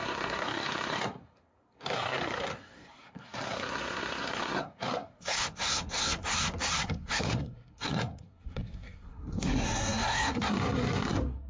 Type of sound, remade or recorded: remade